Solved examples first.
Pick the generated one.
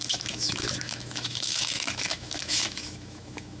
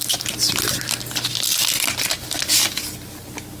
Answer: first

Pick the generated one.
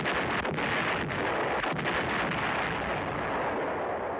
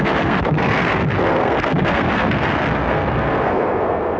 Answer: second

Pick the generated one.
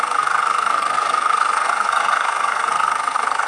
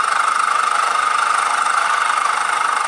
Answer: first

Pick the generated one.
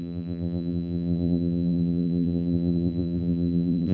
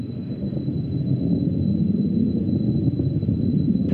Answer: first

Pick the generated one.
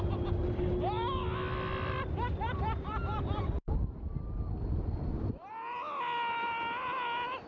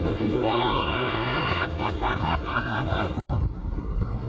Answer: second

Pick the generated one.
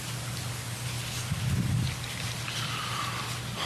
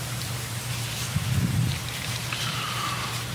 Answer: second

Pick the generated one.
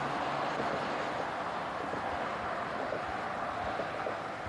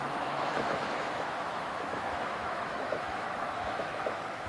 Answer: second